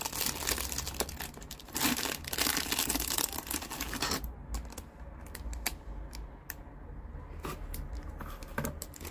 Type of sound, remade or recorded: recorded